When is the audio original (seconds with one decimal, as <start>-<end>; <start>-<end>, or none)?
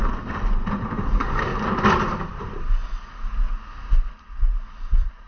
1.5-2.3; 2.8-4.8